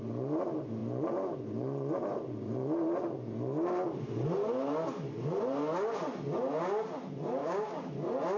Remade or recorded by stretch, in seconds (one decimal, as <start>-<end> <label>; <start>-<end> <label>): 0.0-7.4 recorded; 7.4-7.9 remade; 7.9-8.4 recorded